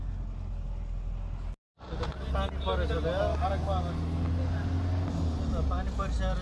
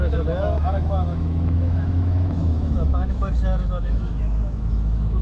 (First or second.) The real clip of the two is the first